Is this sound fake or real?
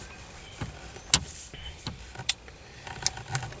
real